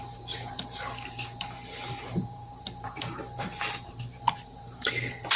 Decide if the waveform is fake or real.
fake